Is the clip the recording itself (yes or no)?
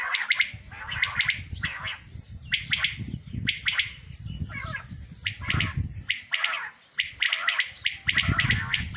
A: yes